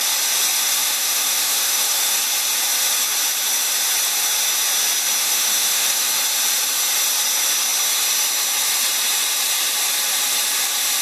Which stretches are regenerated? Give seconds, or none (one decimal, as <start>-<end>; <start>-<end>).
0.6-2.2; 5.2-6.1